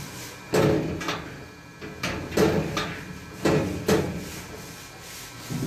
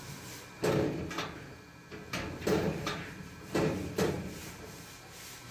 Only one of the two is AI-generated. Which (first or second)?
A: second